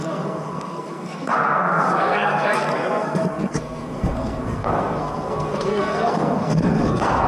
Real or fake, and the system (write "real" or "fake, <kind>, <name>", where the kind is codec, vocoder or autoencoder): fake, codec, SNAC